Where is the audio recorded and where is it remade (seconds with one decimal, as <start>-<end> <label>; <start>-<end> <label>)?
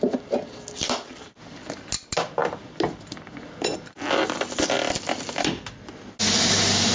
0.0-6.9 recorded